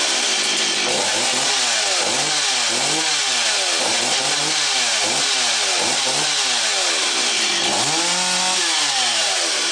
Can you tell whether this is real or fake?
real